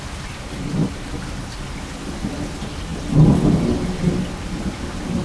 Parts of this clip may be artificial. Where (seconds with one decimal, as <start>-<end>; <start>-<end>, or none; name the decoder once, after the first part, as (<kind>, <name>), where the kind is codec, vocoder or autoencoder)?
none